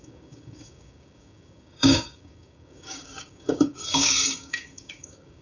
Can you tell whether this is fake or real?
fake